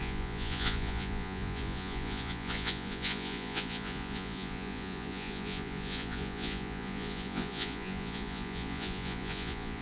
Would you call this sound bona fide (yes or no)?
no